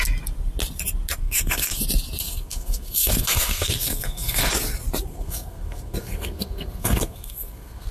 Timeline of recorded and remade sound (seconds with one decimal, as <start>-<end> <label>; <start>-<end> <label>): 0.0-1.2 recorded; 1.2-1.8 remade; 1.8-2.2 recorded; 2.2-4.5 remade; 4.5-5.1 recorded; 5.1-7.9 remade